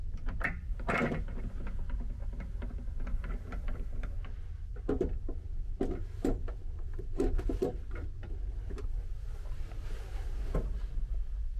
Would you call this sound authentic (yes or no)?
yes